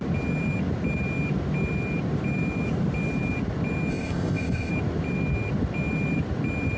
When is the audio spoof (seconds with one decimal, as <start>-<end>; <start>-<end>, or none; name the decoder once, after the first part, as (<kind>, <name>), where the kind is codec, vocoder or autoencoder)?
3.9-4.7 (codec, ZipCodec)